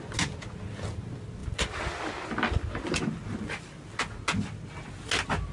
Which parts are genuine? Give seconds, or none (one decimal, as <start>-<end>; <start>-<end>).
0.0-5.5